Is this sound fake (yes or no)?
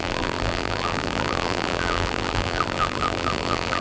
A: yes